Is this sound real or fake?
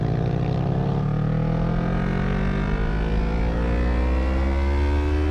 real